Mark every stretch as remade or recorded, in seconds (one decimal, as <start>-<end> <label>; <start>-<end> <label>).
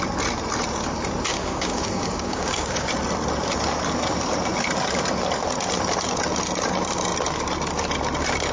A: 0.0-1.3 recorded; 1.3-2.9 remade; 2.9-8.5 recorded